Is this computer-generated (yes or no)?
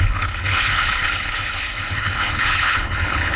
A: yes